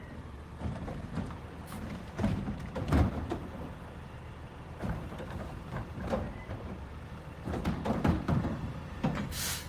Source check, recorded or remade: remade